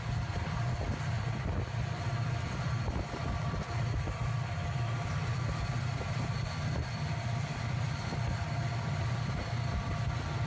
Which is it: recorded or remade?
remade